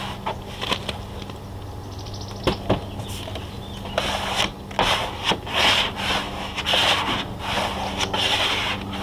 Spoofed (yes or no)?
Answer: no